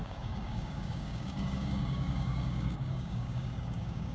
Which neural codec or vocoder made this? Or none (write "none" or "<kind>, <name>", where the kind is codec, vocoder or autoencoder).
codec, DAC